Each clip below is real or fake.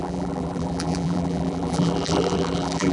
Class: fake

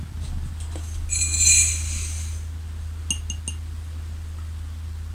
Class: real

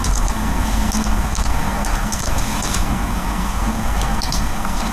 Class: fake